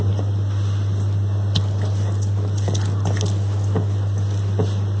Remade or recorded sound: recorded